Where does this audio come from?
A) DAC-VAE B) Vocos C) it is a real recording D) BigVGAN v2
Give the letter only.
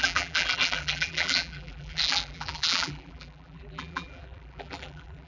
D